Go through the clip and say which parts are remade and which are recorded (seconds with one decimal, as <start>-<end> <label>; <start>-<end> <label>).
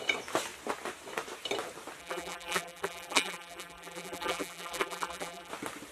0.0-2.0 recorded; 2.0-5.5 remade; 5.5-5.9 recorded